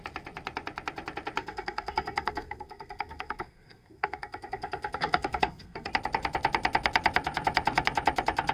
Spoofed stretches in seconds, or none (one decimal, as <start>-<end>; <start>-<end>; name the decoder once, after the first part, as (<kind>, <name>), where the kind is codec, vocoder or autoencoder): 1.4-5.9 (codec, SNAC)